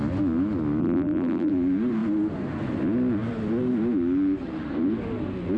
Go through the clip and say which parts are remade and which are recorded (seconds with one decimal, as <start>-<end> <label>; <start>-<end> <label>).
0.0-0.8 recorded; 0.8-1.5 remade; 1.5-5.6 recorded